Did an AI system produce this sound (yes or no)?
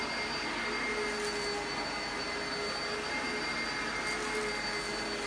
no